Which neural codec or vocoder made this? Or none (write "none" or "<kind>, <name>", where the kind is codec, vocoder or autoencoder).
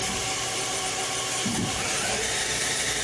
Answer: vocoder, BigVGAN v2